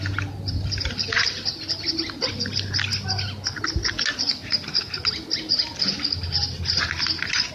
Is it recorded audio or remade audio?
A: recorded